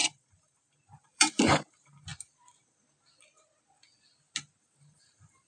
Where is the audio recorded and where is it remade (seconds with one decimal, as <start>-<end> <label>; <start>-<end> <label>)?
0.0-2.1 remade; 2.1-4.6 recorded; 4.6-5.5 remade